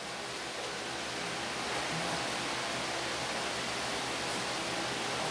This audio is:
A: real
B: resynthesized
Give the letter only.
A